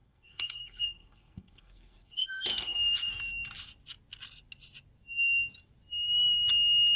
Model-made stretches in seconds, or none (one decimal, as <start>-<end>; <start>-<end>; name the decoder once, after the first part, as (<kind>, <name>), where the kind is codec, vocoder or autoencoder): 0.0-3.2 (codec, SNAC)